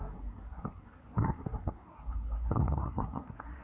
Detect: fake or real fake